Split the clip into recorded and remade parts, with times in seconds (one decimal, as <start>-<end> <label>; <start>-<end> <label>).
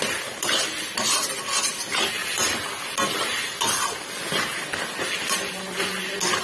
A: 0.0-6.4 recorded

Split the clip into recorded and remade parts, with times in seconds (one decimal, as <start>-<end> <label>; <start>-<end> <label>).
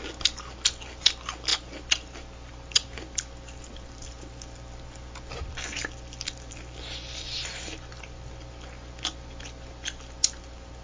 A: 0.0-10.8 recorded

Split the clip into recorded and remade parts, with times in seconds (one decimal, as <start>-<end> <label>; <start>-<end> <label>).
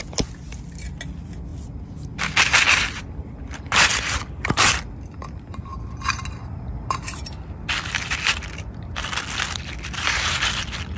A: 0.0-11.0 recorded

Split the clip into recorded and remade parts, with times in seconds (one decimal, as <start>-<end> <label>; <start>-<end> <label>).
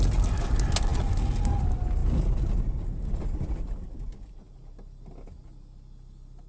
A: 0.0-6.5 recorded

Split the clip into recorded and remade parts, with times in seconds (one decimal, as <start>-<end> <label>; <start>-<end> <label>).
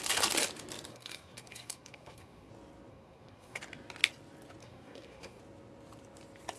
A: 0.0-0.9 recorded; 0.9-2.5 remade; 2.5-2.9 recorded; 2.9-3.6 remade; 3.6-4.6 recorded; 4.6-5.4 remade; 5.4-6.6 recorded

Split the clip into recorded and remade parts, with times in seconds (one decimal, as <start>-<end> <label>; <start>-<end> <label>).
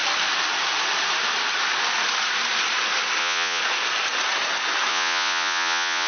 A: 0.0-3.2 recorded; 3.2-3.6 remade; 3.6-4.9 recorded; 4.9-6.1 remade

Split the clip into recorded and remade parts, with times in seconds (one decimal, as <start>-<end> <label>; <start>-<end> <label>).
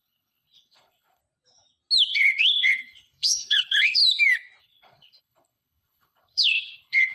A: 0.0-1.2 remade; 1.2-2.1 recorded; 2.1-4.0 remade; 4.0-4.6 recorded; 4.6-7.1 remade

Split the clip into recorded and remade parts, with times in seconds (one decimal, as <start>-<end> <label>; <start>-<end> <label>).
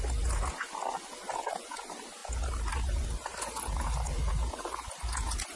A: 0.0-5.6 recorded